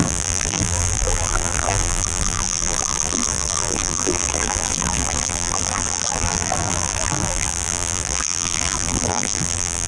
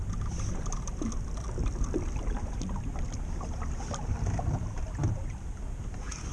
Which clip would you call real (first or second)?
second